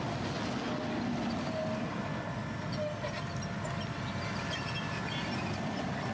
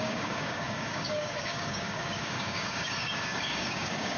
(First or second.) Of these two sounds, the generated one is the second